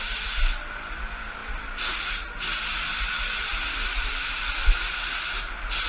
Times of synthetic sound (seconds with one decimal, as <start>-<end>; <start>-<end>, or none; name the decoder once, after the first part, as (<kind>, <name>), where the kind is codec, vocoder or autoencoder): none

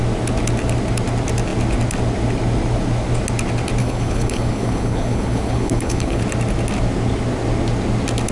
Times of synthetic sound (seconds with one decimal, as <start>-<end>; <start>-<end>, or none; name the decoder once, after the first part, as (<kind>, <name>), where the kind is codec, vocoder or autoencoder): 3.8-6.2 (codec, HILCodec)

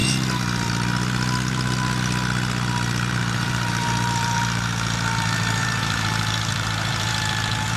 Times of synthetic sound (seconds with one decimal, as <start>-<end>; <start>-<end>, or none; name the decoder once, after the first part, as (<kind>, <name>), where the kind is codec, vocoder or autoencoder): 3.1-7.8 (vocoder, BigVGAN v2)

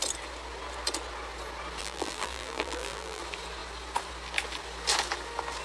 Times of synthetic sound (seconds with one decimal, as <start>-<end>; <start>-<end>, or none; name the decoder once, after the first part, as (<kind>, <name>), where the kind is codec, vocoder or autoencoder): 1.8-3.2 (vocoder, BigVGAN v2)

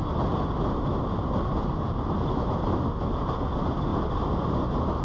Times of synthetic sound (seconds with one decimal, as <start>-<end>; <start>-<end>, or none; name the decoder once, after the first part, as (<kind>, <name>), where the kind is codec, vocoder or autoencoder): none

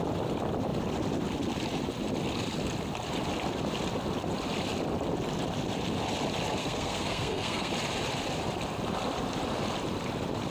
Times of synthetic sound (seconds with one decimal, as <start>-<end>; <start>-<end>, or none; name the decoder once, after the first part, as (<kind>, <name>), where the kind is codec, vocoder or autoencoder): 6.6-7.7 (codec, SNAC)